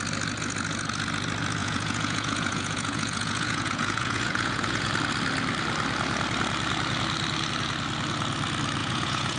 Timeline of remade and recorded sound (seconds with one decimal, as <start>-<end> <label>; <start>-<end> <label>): 0.0-1.6 recorded; 1.6-4.9 remade; 4.9-8.8 recorded; 8.8-9.4 remade